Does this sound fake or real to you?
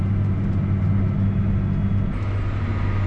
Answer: real